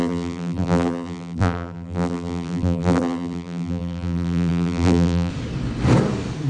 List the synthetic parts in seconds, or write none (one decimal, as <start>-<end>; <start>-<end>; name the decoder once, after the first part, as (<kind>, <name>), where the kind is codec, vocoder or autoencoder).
0.0-5.3 (vocoder, BigVGAN v2)